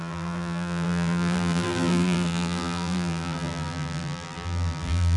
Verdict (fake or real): fake